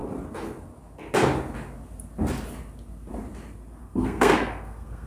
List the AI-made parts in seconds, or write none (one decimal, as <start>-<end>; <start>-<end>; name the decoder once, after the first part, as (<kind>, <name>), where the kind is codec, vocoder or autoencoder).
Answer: 3.8-5.1 (codec, SNAC)